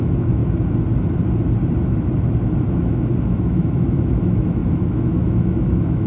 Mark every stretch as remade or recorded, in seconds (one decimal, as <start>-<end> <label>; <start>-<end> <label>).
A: 0.0-0.4 remade; 0.4-2.7 recorded; 2.7-6.1 remade